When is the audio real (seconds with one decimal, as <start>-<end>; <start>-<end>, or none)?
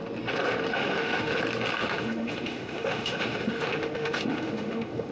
0.0-0.7; 1.4-1.8